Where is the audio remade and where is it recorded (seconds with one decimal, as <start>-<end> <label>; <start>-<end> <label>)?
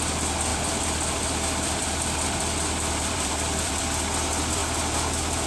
0.0-0.5 recorded; 0.5-3.8 remade; 3.8-4.6 recorded; 4.6-5.5 remade